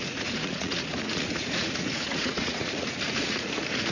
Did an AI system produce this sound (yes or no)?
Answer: yes